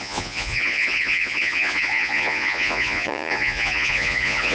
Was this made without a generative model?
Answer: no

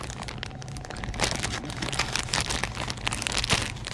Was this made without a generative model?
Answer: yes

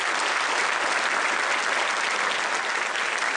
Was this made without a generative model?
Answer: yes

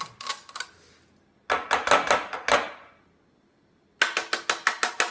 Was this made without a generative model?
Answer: yes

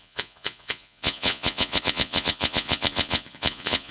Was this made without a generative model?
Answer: no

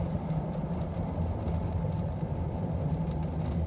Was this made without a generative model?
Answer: yes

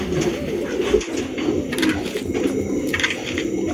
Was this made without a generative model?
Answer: yes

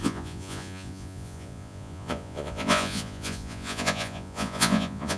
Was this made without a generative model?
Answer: no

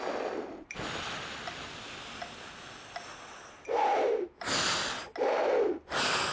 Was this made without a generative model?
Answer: yes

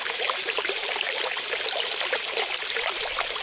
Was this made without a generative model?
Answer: yes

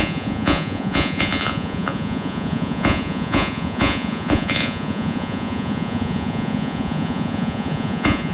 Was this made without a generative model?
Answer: no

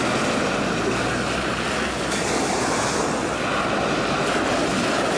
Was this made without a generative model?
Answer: yes